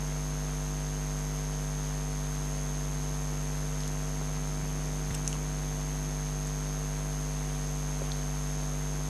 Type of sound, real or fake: real